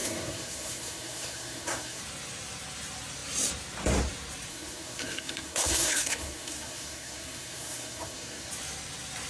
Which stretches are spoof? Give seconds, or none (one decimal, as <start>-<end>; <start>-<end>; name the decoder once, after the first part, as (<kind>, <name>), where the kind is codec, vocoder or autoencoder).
0.0-2.0 (codec, SNAC); 4.5-8.5